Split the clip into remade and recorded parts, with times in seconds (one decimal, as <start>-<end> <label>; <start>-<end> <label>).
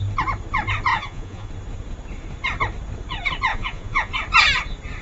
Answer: 0.0-0.9 recorded; 0.9-1.5 remade; 1.5-3.5 recorded; 3.5-4.1 remade; 4.1-5.0 recorded